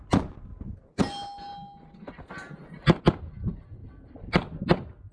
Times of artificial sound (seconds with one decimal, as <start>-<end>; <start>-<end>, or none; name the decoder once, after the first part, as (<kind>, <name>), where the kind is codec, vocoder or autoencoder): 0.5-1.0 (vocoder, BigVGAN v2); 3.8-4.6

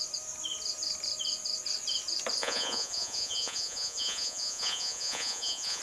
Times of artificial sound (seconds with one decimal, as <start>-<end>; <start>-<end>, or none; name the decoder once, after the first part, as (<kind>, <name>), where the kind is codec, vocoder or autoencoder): 2.4-5.8 (vocoder, Vocos)

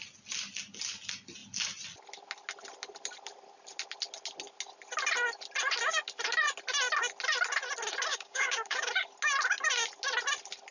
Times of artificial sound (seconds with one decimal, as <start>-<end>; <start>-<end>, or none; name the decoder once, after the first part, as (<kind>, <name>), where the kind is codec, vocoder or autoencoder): 8.1-8.9 (codec, DAC)

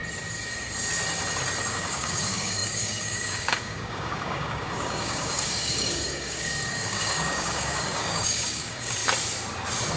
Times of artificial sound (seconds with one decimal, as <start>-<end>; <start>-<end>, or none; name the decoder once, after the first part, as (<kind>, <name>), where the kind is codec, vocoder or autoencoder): 1.7-9.0 (codec, DAC)